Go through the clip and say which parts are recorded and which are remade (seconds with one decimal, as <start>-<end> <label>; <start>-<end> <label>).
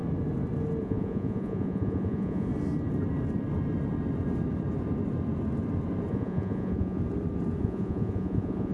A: 0.0-0.8 recorded; 0.8-2.5 remade; 2.5-6.1 recorded; 6.1-7.0 remade; 7.0-7.6 recorded; 7.6-8.7 remade